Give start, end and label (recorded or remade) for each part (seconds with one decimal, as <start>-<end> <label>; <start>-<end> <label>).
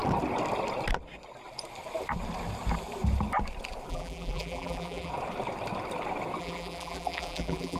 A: 0.0-3.9 recorded; 3.9-5.1 remade; 5.1-6.4 recorded; 6.4-7.8 remade